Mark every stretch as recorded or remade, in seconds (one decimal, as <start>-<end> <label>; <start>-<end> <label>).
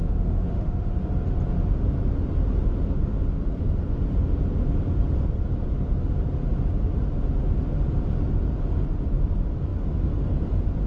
0.0-0.9 remade; 0.9-10.9 recorded